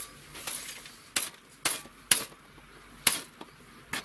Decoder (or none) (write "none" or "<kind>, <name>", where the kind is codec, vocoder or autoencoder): none